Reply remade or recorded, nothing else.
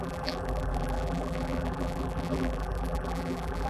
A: remade